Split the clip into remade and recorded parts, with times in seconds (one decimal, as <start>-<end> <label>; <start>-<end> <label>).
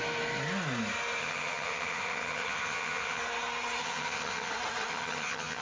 0.0-1.2 recorded; 1.2-3.2 remade; 3.2-3.8 recorded; 3.8-4.5 remade; 4.5-4.9 recorded; 4.9-5.6 remade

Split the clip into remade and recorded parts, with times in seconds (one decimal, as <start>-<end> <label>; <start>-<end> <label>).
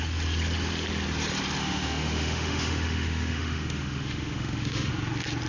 0.0-1.6 recorded; 1.6-4.9 remade; 4.9-5.5 recorded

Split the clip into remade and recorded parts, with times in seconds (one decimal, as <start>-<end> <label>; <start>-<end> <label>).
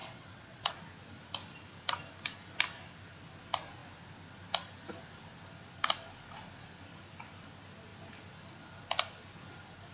0.0-0.7 remade; 0.7-9.9 recorded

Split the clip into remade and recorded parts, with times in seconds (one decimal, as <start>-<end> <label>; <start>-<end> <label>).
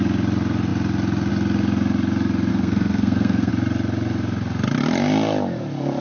0.0-2.5 recorded; 2.5-3.5 remade; 3.5-6.0 recorded